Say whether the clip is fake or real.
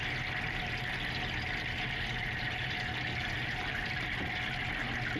real